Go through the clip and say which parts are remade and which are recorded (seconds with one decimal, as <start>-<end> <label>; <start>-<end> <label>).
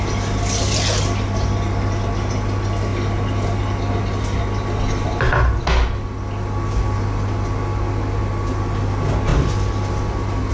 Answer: 0.0-10.5 recorded